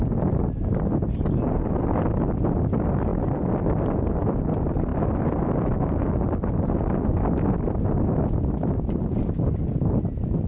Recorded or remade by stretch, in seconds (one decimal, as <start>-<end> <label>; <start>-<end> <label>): 0.0-1.5 remade; 1.5-3.1 recorded; 3.1-3.9 remade; 3.9-4.9 recorded; 4.9-9.2 remade; 9.2-10.5 recorded